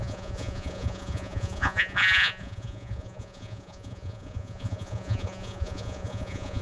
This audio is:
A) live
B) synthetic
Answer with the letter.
B